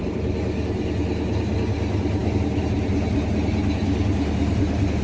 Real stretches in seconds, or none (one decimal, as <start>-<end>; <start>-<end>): 0.0-5.0